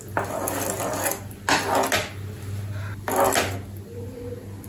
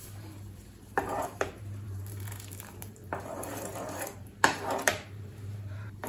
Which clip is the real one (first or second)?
first